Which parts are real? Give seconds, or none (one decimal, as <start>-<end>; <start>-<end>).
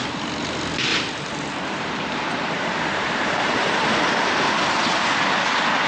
0.0-0.9; 4.4-5.9